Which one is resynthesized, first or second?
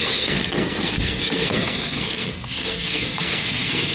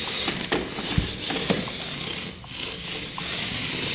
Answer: first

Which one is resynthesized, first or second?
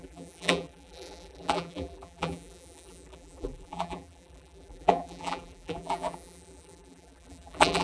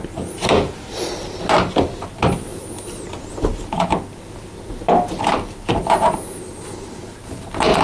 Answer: first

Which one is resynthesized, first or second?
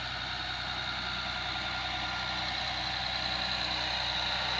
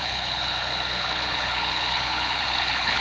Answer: second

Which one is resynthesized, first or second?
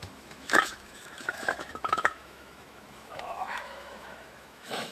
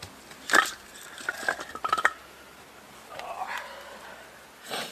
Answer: first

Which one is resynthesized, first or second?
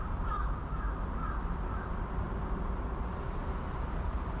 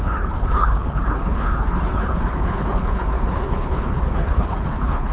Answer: second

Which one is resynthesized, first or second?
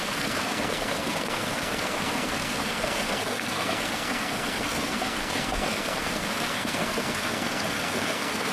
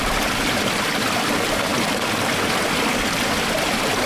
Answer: first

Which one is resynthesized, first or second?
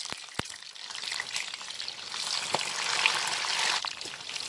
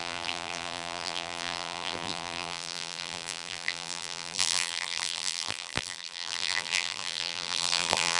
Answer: second